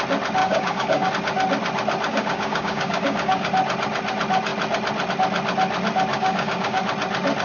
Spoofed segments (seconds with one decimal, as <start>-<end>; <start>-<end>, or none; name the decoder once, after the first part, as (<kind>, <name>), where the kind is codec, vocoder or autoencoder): 0.4-1.1 (codec, DAC); 2.1-3.5; 6.1-6.8